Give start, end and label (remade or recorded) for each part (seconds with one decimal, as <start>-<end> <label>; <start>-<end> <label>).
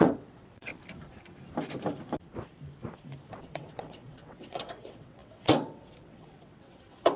0.0-0.7 remade; 0.7-3.4 recorded; 3.4-7.2 remade